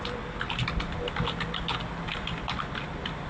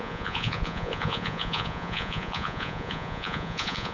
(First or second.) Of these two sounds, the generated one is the second